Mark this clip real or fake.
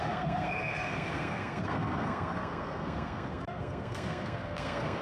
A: fake